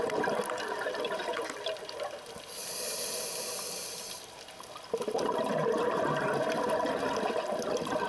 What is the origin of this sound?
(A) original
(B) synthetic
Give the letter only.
A